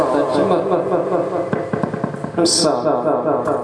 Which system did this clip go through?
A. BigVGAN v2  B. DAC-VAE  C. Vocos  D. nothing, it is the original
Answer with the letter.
D